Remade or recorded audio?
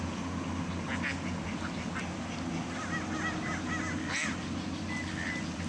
recorded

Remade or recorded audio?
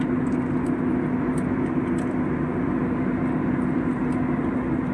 recorded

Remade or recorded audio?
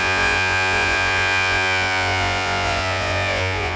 remade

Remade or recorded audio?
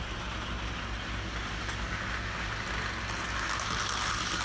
recorded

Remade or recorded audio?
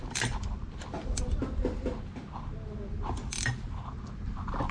recorded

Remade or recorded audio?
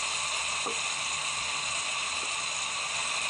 recorded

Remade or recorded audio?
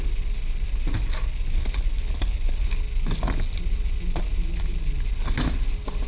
recorded